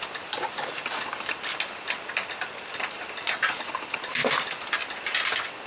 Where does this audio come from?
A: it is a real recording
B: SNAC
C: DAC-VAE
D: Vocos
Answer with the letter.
A